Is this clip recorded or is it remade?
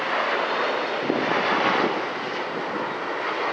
recorded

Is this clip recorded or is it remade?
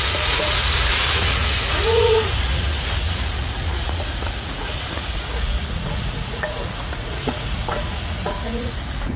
remade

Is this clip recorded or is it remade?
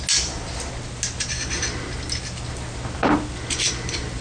recorded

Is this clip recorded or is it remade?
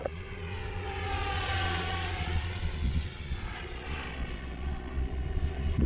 remade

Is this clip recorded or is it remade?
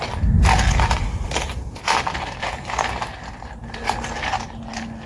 recorded